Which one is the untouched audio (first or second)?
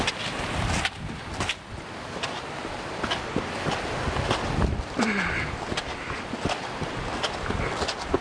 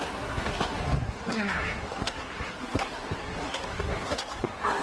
first